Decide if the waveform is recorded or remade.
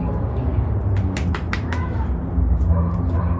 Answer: recorded